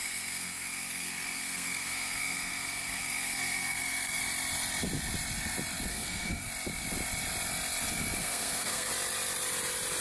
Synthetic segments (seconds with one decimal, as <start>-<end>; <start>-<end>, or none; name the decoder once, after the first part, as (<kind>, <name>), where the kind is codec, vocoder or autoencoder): 0.0-4.2 (codec, SNAC); 5.9-6.5; 8.2-8.9